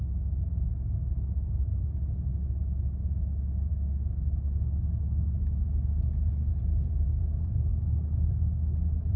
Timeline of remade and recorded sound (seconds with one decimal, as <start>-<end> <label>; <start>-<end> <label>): 0.0-1.6 recorded; 1.6-2.3 remade; 2.3-6.5 recorded; 6.5-7.7 remade; 7.7-9.2 recorded